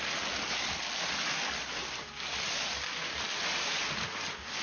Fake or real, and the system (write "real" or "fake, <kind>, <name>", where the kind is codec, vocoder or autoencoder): real